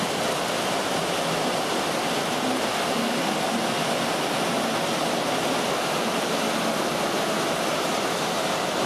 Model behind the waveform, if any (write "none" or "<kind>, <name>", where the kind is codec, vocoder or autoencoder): none